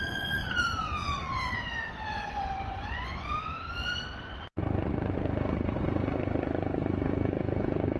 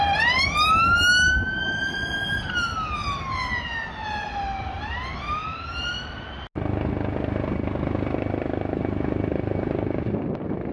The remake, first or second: first